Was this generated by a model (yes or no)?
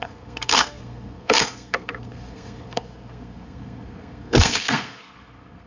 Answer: yes